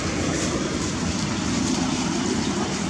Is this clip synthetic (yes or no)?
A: no